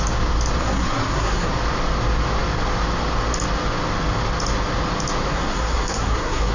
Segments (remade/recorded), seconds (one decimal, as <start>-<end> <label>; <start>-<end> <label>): 0.0-0.6 recorded; 0.6-1.5 remade; 1.5-5.3 recorded; 5.3-6.5 remade